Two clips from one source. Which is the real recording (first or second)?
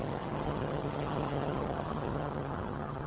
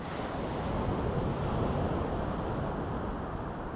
second